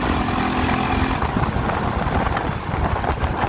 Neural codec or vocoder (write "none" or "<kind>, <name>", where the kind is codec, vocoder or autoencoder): none